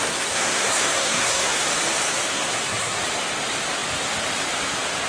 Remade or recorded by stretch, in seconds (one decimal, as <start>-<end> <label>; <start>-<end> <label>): 0.0-1.7 remade; 1.7-2.3 recorded; 2.3-3.0 remade; 3.0-5.1 recorded